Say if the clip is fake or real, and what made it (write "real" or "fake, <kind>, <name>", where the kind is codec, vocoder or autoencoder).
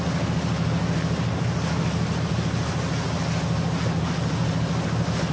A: real